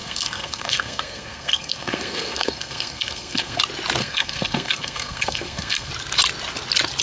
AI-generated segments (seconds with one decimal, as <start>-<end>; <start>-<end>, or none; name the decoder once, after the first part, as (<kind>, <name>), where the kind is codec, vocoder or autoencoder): 0.0-3.6 (codec, SNAC); 4.0-5.9

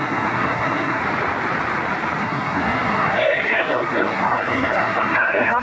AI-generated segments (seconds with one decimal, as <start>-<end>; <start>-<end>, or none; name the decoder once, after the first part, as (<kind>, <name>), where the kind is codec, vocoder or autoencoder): 0.0-1.0 (codec, SNAC); 2.2-5.6

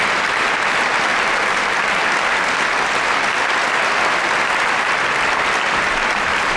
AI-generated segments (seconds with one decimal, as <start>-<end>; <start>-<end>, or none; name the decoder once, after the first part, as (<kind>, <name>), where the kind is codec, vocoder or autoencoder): none

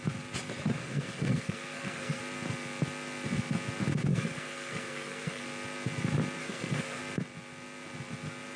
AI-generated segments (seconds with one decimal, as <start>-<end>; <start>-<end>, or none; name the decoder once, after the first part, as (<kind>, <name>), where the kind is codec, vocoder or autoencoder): 0.8-2.2 (codec, SNAC); 4.1-5.4; 6.4-7.0

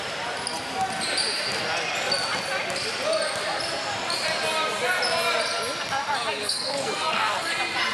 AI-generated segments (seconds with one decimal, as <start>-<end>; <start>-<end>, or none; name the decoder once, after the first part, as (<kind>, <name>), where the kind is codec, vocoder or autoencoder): 6.4-7.5 (codec, SNAC)